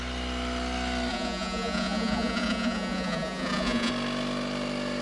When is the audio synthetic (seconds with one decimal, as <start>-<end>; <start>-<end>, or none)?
1.1-3.9

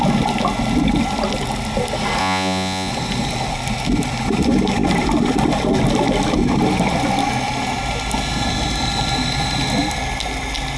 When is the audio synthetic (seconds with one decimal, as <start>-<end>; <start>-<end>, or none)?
2.2-2.9

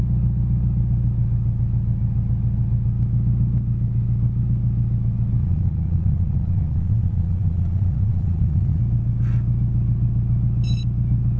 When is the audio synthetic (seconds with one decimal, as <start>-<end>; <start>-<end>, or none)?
5.4-8.8